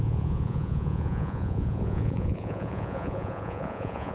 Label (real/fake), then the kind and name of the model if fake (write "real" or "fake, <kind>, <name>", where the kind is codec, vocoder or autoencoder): fake, vocoder, Vocos